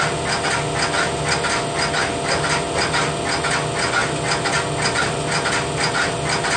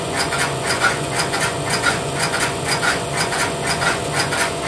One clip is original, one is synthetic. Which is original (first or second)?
first